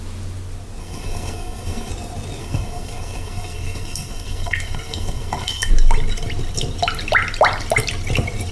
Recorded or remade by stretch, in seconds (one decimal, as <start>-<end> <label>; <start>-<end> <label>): 0.0-0.8 recorded; 0.8-1.9 remade; 1.9-2.4 recorded; 2.4-5.7 remade; 5.7-8.5 recorded